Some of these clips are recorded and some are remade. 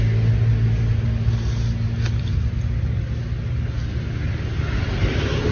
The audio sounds recorded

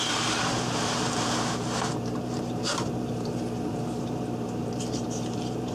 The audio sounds remade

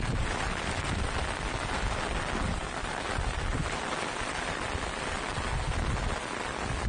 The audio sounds recorded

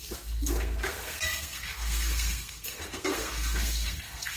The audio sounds remade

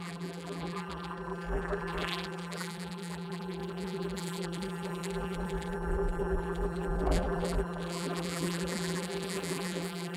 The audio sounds remade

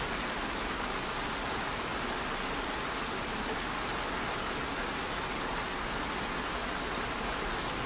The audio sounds recorded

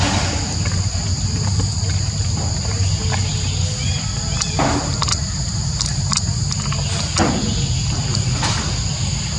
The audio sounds recorded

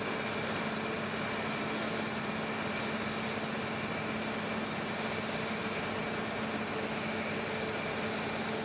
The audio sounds recorded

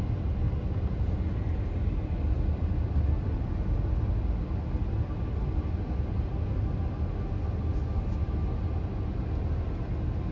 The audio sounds recorded